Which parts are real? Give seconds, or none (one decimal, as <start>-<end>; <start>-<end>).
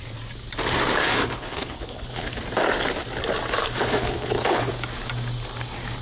0.0-1.0; 2.4-3.6; 4.7-6.0